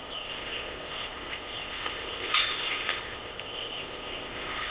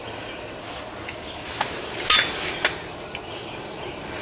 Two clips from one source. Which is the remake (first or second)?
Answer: first